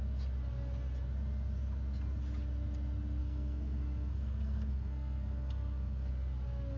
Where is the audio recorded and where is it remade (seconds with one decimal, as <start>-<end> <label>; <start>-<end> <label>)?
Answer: 0.0-3.2 recorded; 3.2-6.1 remade; 6.1-6.8 recorded